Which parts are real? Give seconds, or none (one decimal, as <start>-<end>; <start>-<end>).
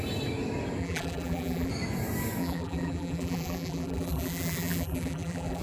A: 0.0-0.8; 1.7-2.4